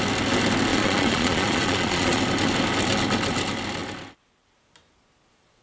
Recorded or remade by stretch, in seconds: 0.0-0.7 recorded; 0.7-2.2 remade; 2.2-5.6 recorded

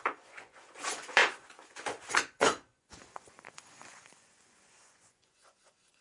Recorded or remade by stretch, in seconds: 0.0-6.0 remade